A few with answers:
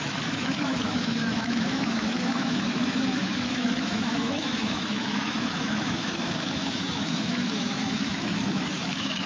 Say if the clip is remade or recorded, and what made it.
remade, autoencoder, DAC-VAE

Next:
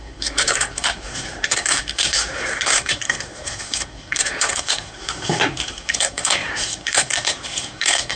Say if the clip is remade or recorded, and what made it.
remade, codec, SNAC